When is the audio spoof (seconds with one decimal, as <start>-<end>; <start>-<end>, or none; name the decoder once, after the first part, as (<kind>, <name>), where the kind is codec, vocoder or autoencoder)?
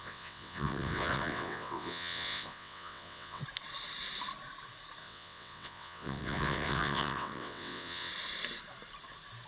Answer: 0.0-3.4 (vocoder, WaveNeXt); 5.0-8.1